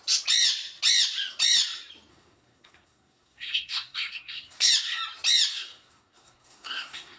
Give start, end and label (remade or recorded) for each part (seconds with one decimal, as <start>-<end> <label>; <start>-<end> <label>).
0.0-2.1 recorded; 2.1-4.7 remade; 4.7-5.5 recorded; 5.5-7.2 remade

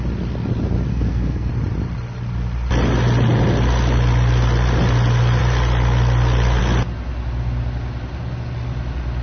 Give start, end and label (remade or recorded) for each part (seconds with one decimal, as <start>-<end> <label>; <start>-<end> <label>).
0.0-0.9 recorded; 0.9-1.5 remade; 1.5-9.2 recorded

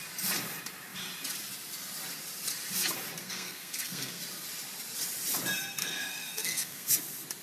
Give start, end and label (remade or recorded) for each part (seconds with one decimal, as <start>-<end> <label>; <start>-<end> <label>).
0.0-3.2 recorded; 3.2-4.2 remade; 4.2-5.8 recorded; 5.8-6.9 remade; 6.9-7.4 recorded

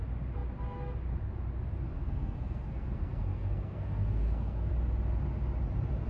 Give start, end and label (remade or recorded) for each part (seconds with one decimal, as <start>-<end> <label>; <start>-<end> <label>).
0.0-2.0 recorded; 2.0-4.7 remade; 4.7-6.1 recorded

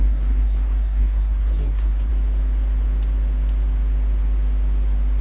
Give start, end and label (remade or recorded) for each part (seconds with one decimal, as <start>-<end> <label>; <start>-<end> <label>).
0.0-2.1 remade; 2.1-5.2 recorded

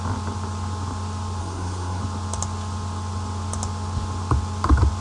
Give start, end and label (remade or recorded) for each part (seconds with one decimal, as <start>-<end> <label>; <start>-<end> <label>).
0.0-1.4 recorded; 1.4-2.0 remade; 2.0-5.0 recorded

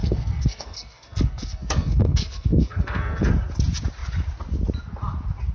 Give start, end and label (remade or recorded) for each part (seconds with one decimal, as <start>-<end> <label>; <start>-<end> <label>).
0.0-3.3 remade; 3.3-5.5 recorded